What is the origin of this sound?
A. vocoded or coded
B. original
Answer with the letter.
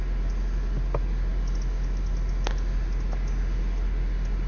B